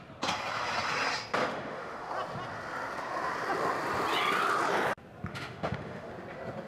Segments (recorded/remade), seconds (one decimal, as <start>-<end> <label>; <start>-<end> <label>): 0.0-1.4 recorded; 1.4-2.1 remade; 2.1-5.3 recorded; 5.3-6.1 remade; 6.1-6.7 recorded